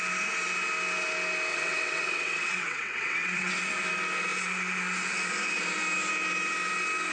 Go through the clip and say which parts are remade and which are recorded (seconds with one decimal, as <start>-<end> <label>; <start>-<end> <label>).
0.0-1.5 recorded; 1.5-3.5 remade; 3.5-7.1 recorded